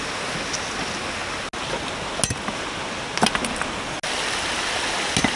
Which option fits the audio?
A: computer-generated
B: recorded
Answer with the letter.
B